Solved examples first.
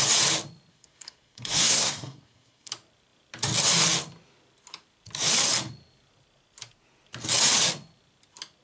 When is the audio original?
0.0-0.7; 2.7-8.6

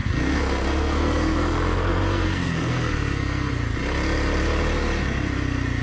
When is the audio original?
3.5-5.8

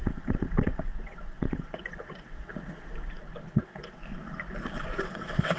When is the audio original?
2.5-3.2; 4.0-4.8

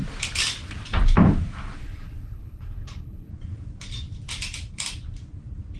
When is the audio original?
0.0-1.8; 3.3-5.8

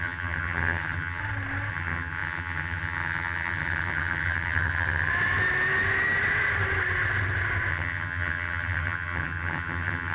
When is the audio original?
1.2-1.7; 5.1-7.7

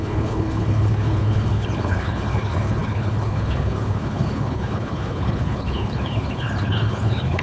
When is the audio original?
none

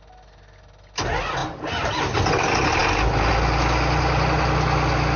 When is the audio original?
0.0-5.2